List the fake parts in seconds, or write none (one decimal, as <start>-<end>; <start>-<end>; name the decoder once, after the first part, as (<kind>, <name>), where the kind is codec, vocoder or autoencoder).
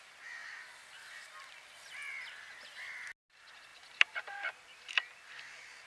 3.7-4.9 (vocoder, BigVGAN v2)